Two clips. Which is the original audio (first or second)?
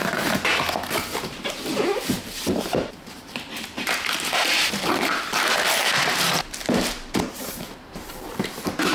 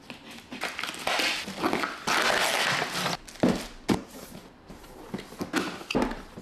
second